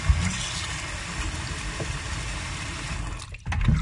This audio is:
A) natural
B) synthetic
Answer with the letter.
A